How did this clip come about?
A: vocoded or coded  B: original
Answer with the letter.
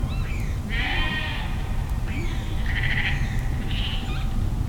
B